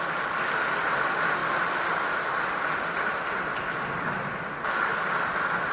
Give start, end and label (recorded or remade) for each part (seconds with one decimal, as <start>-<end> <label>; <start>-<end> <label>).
0.0-5.7 recorded

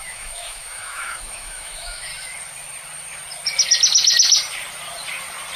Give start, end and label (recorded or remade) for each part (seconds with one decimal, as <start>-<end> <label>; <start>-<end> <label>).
0.0-2.1 remade; 2.1-5.6 recorded

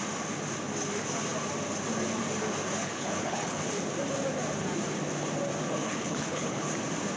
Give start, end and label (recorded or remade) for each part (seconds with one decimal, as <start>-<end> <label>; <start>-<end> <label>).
0.0-2.8 recorded; 2.8-3.6 remade; 3.6-5.8 recorded; 5.8-6.7 remade; 6.7-7.2 recorded

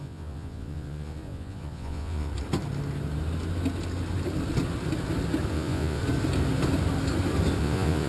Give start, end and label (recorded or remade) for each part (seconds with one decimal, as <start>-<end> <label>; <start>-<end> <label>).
0.0-2.3 remade; 2.3-5.5 recorded; 5.5-6.0 remade; 6.0-7.6 recorded; 7.6-8.1 remade

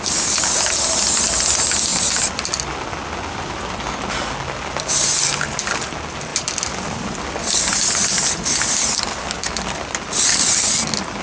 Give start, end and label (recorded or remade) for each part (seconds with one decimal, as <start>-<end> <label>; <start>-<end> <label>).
0.0-1.9 recorded; 1.9-3.4 remade; 3.4-6.3 recorded; 6.3-9.5 remade; 9.5-11.2 recorded